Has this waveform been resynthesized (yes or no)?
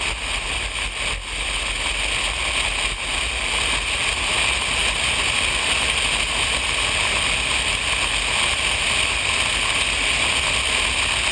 no